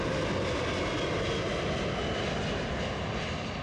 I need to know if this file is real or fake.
real